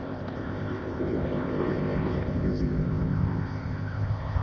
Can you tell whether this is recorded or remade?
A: remade